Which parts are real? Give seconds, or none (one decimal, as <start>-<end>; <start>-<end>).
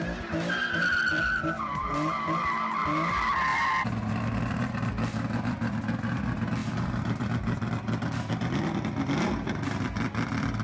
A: 0.0-1.1; 1.9-6.6; 8.3-10.6